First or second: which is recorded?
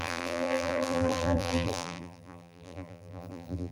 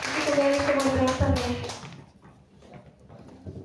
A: second